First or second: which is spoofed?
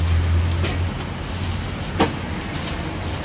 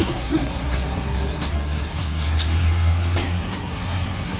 second